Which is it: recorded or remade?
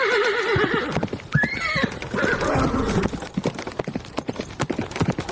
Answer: recorded